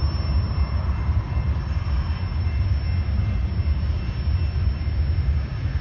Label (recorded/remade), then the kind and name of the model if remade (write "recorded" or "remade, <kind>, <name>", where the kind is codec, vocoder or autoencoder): recorded